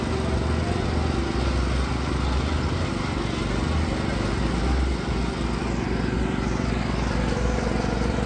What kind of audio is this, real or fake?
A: real